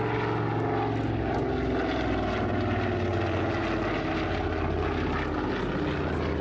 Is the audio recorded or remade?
recorded